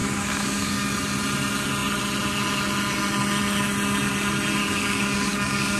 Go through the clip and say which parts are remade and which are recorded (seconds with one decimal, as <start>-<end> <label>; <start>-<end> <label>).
0.0-0.9 remade; 0.9-4.6 recorded; 4.6-5.8 remade